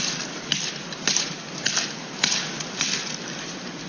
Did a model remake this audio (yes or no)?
no